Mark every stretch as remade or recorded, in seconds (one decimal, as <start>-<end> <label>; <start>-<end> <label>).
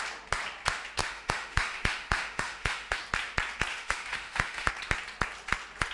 0.0-1.0 recorded; 1.0-3.0 remade; 3.0-3.7 recorded; 3.7-4.7 remade; 4.7-5.9 recorded